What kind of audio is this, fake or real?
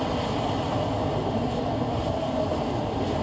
real